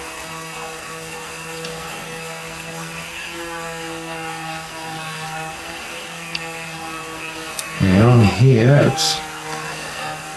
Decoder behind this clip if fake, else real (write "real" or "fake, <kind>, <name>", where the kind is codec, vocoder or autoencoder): fake, codec, SNAC